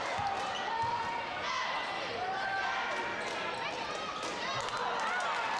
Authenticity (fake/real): real